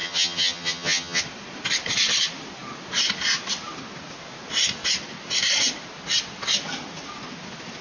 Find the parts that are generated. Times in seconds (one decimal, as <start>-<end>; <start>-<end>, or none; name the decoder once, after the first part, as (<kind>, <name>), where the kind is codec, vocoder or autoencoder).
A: 0.0-1.2 (vocoder, HiFi-GAN)